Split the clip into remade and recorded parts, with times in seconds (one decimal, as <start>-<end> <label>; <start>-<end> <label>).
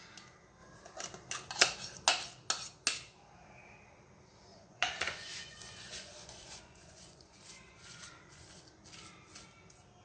0.0-4.5 recorded; 4.5-8.6 remade; 8.6-10.0 recorded